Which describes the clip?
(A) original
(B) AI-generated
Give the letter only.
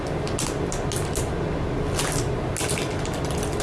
A